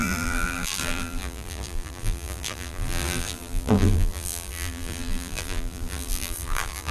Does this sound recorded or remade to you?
remade